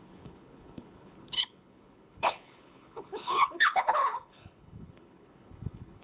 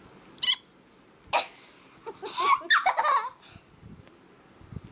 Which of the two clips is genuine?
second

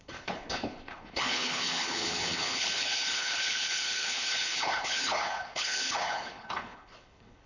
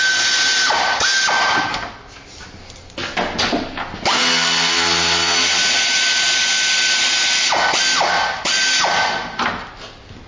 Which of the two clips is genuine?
second